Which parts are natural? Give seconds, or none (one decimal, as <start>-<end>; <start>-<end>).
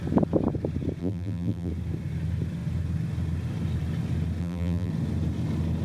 0.0-1.0; 1.7-4.4; 4.9-5.8